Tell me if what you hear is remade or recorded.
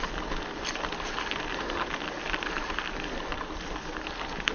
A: recorded